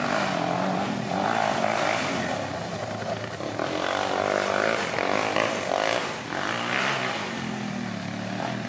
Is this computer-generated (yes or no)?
no